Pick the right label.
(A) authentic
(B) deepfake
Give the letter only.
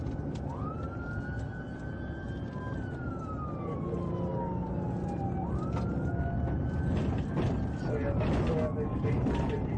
A